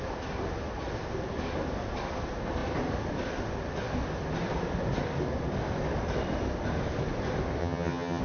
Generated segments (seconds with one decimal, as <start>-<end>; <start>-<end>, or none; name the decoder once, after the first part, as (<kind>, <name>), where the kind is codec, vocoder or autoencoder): 7.6-8.2 (vocoder, HiFi-GAN)